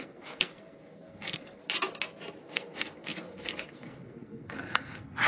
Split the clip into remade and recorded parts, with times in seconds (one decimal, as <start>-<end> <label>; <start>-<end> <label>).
0.0-1.6 remade; 1.6-2.4 recorded; 2.4-5.3 remade